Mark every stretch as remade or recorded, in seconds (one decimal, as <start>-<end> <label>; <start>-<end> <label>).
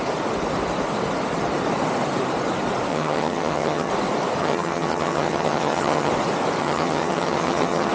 0.0-2.9 recorded; 2.9-3.9 remade; 3.9-4.4 recorded; 4.4-6.1 remade; 6.1-6.6 recorded; 6.6-7.9 remade